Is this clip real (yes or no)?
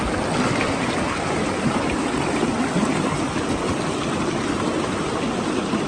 yes